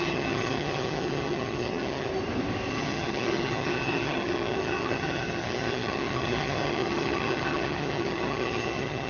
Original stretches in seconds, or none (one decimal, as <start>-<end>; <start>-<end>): 2.1-2.7